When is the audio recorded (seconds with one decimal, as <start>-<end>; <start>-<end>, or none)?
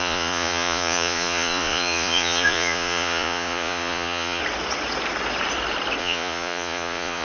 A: 4.4-6.0